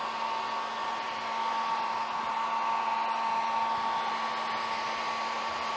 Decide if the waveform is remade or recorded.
recorded